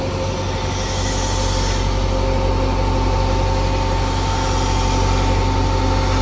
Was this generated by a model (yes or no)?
no